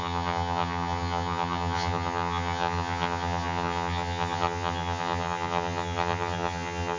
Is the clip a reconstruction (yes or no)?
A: yes